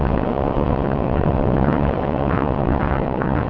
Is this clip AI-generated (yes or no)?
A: yes